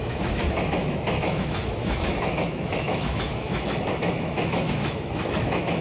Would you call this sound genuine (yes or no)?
no